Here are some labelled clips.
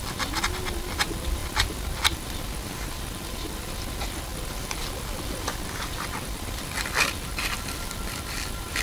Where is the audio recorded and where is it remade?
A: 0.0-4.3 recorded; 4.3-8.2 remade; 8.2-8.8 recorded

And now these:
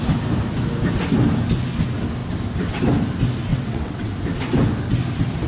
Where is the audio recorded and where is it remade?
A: 0.0-3.5 recorded; 3.5-4.1 remade; 4.1-5.5 recorded

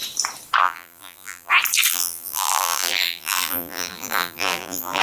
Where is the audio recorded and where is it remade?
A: 0.0-0.6 recorded; 0.6-1.5 remade; 1.5-1.9 recorded; 1.9-5.0 remade